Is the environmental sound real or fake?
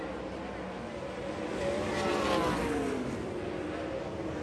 real